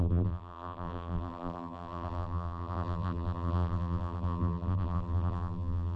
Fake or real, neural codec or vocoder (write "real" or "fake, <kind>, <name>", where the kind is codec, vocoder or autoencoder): fake, vocoder, BigVGAN v2